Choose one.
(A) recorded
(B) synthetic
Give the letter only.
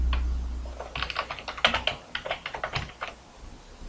A